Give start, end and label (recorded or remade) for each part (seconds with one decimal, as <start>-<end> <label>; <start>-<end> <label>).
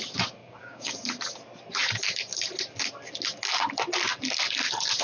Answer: 0.0-0.4 recorded; 0.4-0.9 remade; 0.9-5.0 recorded